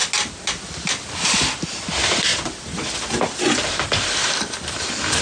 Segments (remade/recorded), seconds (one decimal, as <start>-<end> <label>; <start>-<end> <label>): 0.0-1.7 recorded; 1.7-5.2 remade